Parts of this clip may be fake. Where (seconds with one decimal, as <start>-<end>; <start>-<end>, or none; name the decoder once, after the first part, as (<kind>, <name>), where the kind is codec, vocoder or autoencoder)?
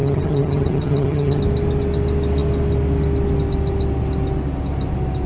0.0-1.4 (vocoder, HiFi-GAN)